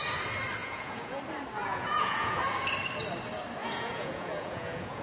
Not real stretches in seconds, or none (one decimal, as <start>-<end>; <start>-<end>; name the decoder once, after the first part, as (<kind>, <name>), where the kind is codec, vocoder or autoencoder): 0.6-1.2 (vocoder, Vocos); 1.6-2.4; 3.6-5.0